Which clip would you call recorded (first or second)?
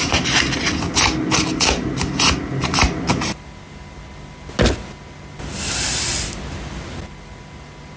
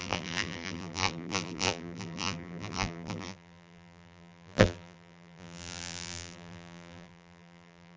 first